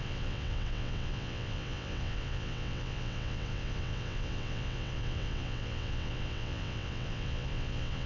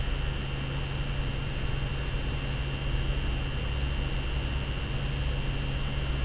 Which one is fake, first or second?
first